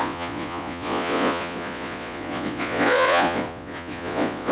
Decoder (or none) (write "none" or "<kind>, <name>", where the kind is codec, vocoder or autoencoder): vocoder, Vocos